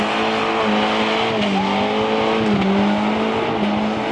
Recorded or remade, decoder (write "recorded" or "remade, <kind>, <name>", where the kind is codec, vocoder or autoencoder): recorded